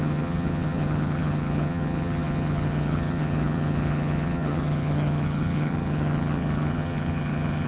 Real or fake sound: fake